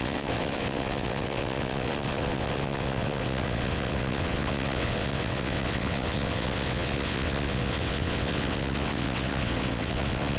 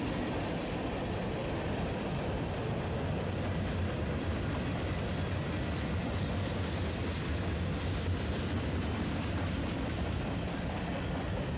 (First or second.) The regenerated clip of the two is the first